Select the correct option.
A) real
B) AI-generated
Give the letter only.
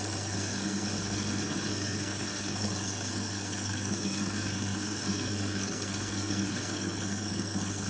B